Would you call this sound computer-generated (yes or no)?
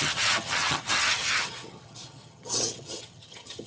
yes